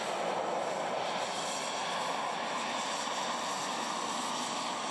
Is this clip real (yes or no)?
yes